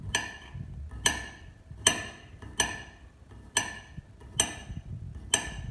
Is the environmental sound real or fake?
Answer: real